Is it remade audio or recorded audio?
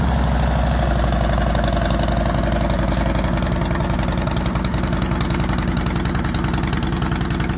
recorded